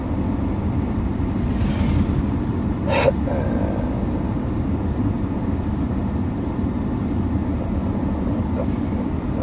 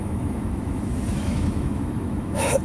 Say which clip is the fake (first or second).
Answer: second